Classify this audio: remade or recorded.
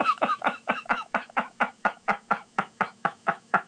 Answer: remade